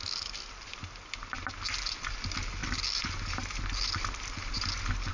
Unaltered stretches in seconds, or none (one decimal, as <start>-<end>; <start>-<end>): 0.0-5.1